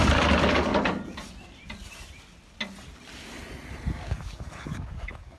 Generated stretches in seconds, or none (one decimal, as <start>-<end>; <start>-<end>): 0.0-0.7; 3.9-5.4